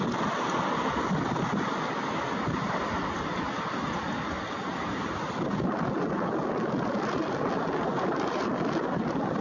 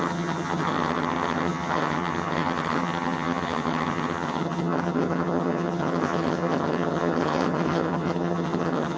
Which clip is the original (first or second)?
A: first